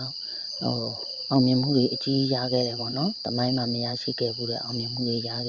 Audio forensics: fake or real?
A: fake